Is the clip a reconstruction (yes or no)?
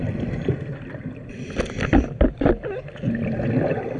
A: no